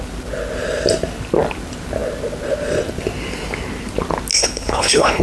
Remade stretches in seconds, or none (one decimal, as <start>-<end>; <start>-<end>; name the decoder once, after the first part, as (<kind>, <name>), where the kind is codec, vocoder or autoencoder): 4.3-5.2 (codec, HILCodec)